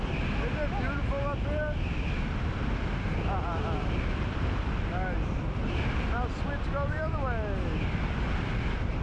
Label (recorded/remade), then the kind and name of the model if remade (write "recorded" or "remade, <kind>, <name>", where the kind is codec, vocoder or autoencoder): recorded